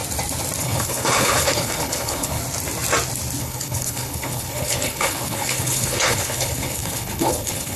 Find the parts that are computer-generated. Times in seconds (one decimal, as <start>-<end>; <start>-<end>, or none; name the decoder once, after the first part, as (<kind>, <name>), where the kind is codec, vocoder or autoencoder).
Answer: 0.6-2.4 (codec, HILCodec); 3.4-7.8